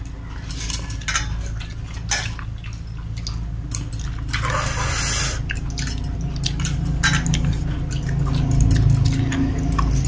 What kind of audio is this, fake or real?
real